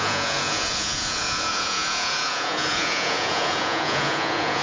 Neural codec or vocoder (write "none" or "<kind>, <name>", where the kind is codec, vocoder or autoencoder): vocoder, Vocos